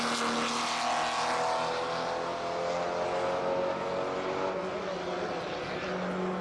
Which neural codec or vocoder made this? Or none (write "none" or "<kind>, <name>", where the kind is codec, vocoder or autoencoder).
none